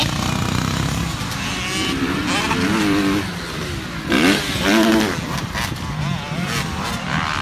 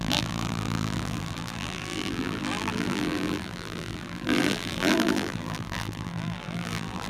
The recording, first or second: first